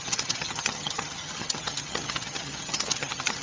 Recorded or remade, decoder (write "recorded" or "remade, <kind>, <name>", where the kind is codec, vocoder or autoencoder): remade, vocoder, HiFi-GAN